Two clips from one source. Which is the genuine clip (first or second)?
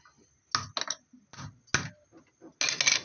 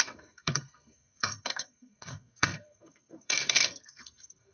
first